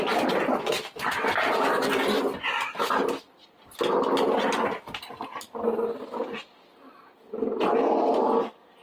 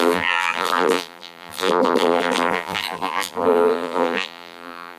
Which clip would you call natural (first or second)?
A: first